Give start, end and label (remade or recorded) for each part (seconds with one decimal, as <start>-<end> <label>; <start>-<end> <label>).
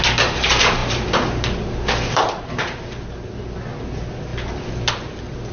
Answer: 0.0-5.5 recorded